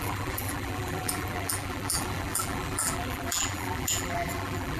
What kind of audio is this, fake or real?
fake